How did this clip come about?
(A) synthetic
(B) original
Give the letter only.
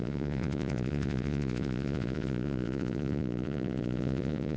A